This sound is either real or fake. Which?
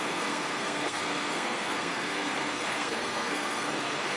fake